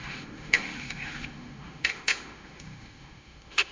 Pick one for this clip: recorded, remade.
remade